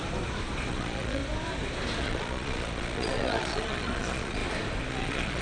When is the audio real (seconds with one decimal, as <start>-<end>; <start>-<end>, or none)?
0.0-0.7; 1.2-2.0; 4.4-4.9